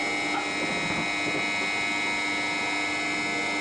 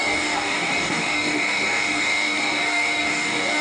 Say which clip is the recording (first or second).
first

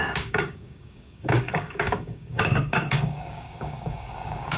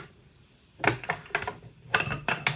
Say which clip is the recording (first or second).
second